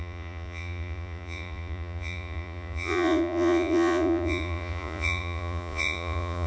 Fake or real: fake